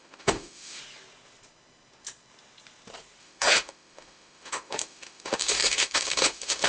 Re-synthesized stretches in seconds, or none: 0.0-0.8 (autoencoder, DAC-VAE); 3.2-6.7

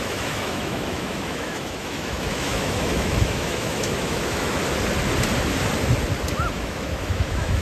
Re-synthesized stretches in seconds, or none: 0.0-4.6 (autoencoder, DAC-VAE); 6.5-7.6